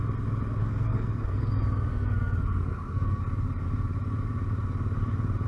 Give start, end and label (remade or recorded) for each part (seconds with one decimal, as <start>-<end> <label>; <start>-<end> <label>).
0.0-0.6 recorded; 0.6-1.5 remade; 1.5-1.9 recorded; 1.9-3.2 remade; 3.2-5.5 recorded